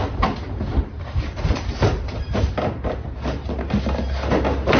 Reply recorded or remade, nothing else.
recorded